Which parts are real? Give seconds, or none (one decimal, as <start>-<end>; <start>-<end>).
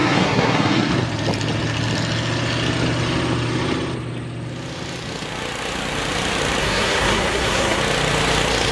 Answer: 0.9-6.6; 7.8-8.7